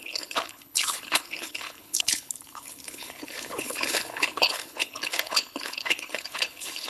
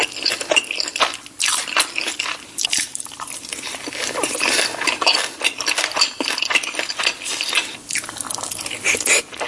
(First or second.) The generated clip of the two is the first